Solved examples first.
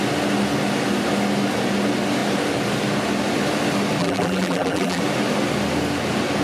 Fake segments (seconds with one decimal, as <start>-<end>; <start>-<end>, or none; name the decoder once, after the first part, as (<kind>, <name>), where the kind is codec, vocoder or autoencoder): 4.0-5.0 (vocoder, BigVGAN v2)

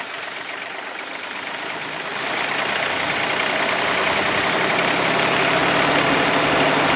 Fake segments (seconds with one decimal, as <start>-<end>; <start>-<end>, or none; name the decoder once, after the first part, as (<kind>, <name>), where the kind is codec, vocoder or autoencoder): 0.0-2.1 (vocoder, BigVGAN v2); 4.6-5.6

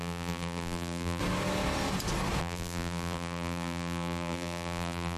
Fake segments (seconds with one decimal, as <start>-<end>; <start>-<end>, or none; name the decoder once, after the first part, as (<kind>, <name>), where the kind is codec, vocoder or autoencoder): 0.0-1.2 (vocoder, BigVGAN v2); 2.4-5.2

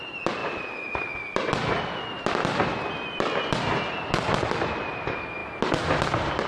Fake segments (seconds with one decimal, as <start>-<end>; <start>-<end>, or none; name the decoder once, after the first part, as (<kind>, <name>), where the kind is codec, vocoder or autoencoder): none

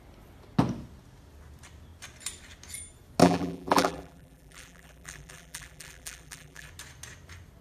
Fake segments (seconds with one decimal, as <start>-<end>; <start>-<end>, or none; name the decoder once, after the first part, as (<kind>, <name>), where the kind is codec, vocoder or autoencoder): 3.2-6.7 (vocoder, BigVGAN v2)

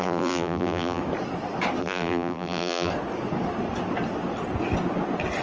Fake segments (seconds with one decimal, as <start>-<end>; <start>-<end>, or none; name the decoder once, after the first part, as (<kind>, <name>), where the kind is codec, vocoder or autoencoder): 0.0-1.0 (vocoder, BigVGAN v2); 1.8-2.9